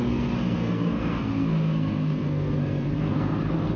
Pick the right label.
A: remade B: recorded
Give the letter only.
A